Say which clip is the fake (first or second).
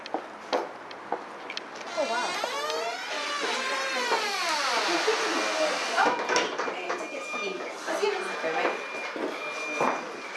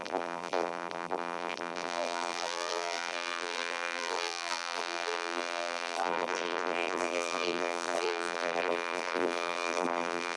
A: second